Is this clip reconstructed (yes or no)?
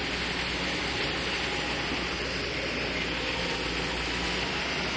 no